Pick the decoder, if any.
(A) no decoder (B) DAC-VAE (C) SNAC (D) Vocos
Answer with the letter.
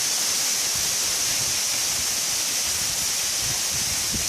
A